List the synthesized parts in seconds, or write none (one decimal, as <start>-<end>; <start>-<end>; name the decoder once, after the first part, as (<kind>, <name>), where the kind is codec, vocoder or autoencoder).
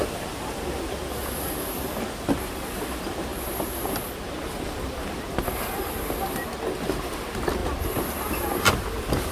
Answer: 7.6-8.1 (vocoder, BigVGAN v2)